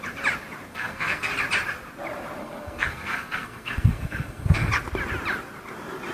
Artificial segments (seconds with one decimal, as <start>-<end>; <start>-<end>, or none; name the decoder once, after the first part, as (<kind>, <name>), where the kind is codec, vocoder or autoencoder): 0.7-1.3 (codec, SNAC); 2.4-4.7